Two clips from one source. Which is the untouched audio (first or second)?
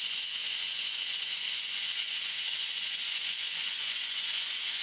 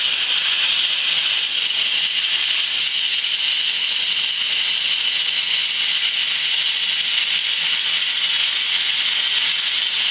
second